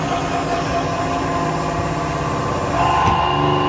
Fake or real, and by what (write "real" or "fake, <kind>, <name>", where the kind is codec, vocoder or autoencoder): real